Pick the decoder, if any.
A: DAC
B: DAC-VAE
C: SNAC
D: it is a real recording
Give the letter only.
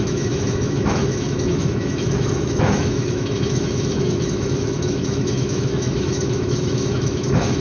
B